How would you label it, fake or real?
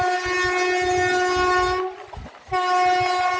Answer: real